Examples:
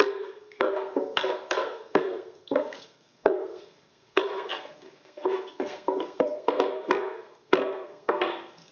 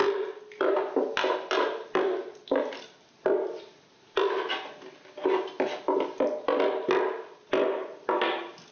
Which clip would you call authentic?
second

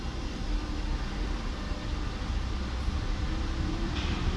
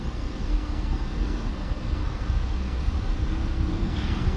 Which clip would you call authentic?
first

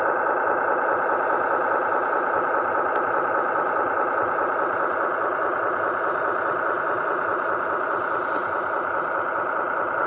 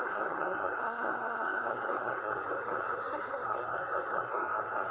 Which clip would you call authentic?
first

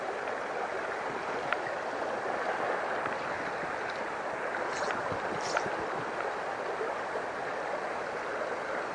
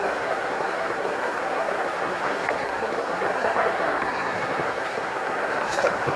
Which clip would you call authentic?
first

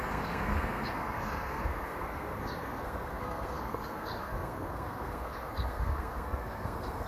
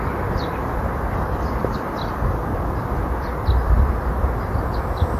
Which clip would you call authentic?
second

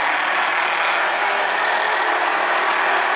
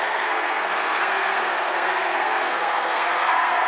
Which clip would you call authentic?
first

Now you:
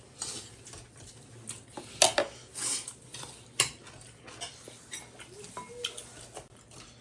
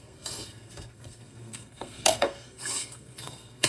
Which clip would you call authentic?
first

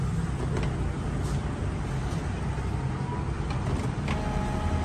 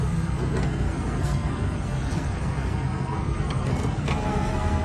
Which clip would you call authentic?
first